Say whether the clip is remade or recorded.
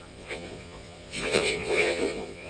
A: remade